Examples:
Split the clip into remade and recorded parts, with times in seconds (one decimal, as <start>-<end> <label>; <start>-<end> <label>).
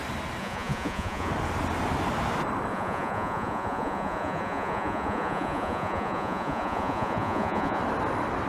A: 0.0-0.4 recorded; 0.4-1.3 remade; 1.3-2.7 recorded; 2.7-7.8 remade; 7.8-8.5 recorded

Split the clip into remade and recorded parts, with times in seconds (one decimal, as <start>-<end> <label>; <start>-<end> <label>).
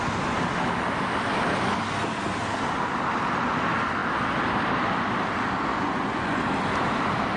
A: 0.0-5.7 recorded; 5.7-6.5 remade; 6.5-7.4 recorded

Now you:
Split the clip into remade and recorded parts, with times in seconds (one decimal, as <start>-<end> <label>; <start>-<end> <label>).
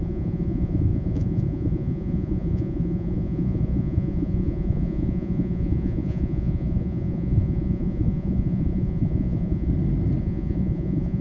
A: 0.0-9.7 remade; 9.7-10.2 recorded; 10.2-11.2 remade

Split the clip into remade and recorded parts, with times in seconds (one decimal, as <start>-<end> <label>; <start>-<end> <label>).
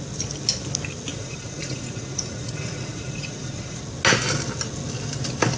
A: 0.0-1.1 recorded; 1.1-3.8 remade; 3.8-5.6 recorded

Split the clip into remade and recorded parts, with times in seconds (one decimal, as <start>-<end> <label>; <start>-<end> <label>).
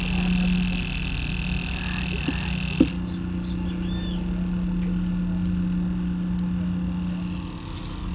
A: 0.0-8.1 recorded